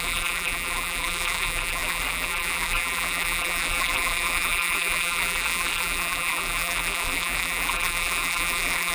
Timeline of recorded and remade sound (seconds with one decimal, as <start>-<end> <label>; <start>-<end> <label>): 0.0-8.9 remade